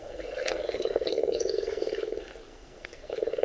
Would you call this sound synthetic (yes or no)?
yes